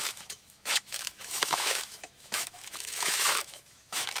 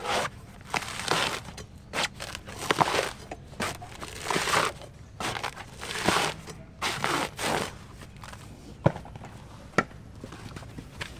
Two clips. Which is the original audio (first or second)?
second